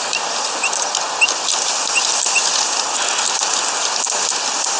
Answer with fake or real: real